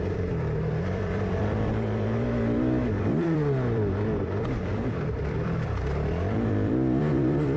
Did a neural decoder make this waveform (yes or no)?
yes